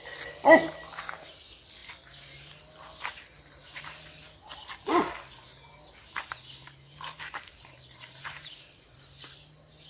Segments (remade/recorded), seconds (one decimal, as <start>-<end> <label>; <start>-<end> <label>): 0.0-8.2 recorded; 8.2-9.2 remade; 9.2-9.9 recorded